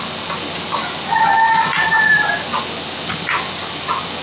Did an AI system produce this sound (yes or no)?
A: no